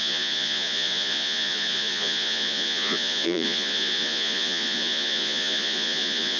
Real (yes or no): no